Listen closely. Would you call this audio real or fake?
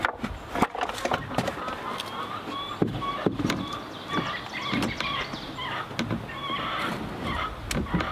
real